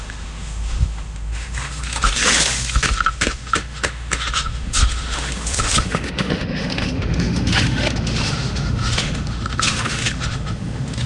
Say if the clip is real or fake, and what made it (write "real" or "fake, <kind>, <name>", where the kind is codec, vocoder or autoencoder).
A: fake, autoencoder, DAC-VAE